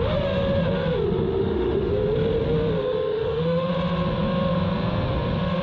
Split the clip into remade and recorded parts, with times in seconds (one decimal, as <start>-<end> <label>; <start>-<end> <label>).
0.0-1.4 recorded; 1.4-1.9 remade; 1.9-2.8 recorded; 2.8-3.7 remade; 3.7-5.6 recorded